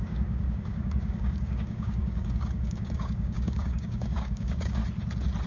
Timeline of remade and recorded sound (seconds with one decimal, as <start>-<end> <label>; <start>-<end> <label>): 0.0-4.8 remade; 4.8-5.5 recorded